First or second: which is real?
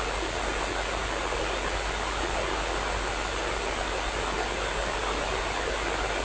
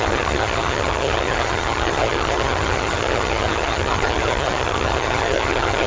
first